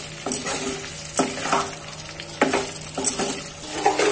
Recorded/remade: recorded